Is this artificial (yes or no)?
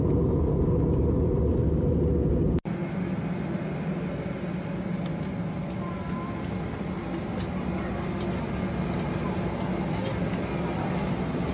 no